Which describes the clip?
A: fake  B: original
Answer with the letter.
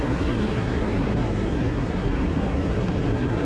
A